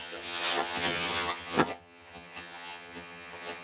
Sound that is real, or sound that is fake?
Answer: fake